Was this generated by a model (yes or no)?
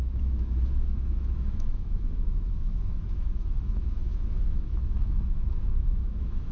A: yes